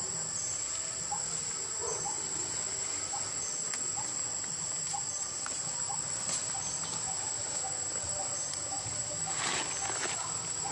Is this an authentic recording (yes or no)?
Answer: yes